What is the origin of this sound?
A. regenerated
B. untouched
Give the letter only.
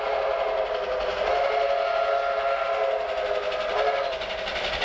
B